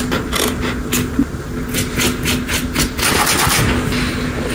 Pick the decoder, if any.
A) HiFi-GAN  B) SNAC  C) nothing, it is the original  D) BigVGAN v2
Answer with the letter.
C